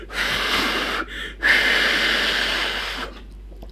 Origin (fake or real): real